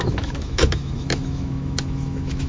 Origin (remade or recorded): remade